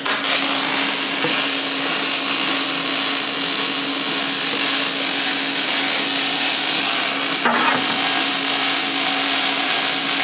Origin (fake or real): real